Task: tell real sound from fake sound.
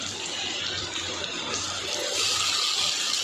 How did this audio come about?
real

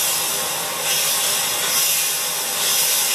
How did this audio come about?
real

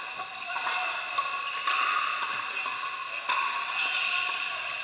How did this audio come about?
real